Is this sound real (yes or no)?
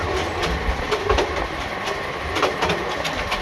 yes